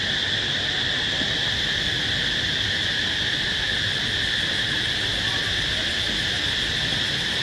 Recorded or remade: recorded